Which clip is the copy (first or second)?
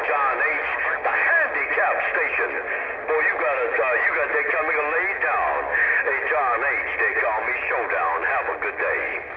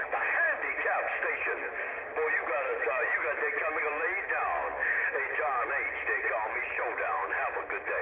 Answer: second